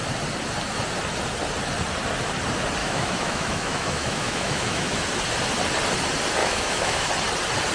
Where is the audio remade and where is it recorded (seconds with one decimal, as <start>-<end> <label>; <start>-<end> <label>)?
0.0-2.8 recorded; 2.8-5.0 remade; 5.0-6.4 recorded; 6.4-7.1 remade; 7.1-7.7 recorded